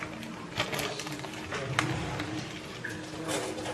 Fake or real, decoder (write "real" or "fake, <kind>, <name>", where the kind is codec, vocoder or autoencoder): real